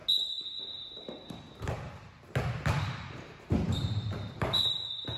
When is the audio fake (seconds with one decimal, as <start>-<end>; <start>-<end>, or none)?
3.8-5.2